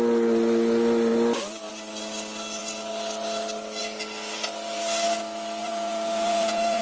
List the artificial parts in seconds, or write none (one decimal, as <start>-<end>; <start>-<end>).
5.6-6.8